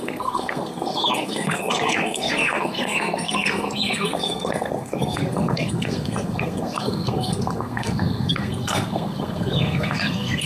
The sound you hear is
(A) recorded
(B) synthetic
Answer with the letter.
B